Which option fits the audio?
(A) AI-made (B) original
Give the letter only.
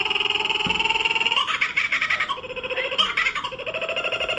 A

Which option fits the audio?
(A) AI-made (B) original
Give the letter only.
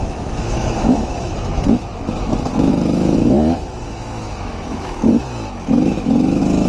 A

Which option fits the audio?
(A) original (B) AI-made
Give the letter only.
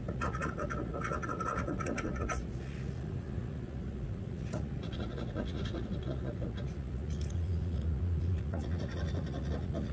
B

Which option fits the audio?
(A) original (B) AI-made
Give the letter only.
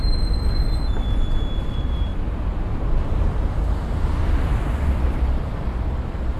A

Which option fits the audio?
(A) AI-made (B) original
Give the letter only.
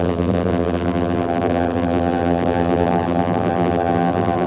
A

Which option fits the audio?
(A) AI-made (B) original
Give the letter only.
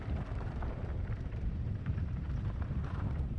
A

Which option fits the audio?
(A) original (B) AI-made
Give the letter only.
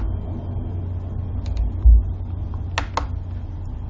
A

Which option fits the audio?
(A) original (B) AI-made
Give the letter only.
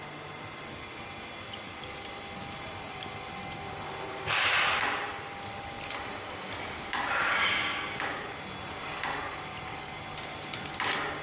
A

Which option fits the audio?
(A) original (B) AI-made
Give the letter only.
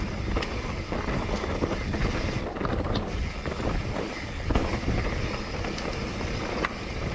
A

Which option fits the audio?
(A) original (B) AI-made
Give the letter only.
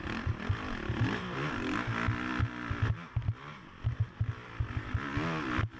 A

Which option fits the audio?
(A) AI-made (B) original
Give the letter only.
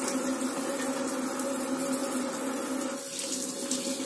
B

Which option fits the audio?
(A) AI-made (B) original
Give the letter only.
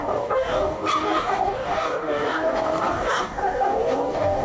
A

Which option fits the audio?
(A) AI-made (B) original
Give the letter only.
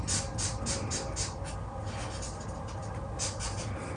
B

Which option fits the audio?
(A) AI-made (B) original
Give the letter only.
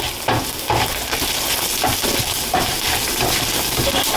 B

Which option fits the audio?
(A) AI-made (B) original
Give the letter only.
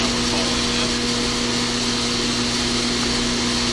B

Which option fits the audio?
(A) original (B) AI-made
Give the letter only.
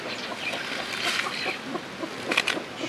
A